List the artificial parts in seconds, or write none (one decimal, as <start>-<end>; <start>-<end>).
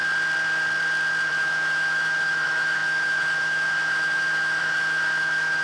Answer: 1.3-5.6